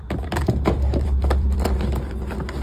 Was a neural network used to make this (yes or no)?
yes